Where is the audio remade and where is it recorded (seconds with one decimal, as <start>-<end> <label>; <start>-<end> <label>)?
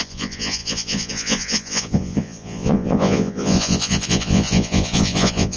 0.0-5.6 remade